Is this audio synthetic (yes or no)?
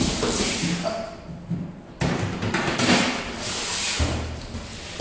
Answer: no